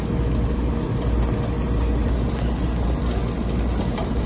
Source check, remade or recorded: recorded